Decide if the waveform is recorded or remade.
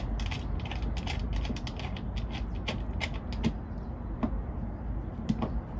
recorded